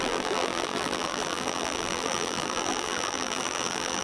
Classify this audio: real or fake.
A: fake